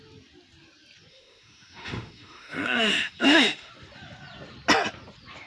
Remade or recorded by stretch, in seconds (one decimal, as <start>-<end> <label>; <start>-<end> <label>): 0.0-1.1 recorded; 1.1-3.7 remade; 3.7-5.5 recorded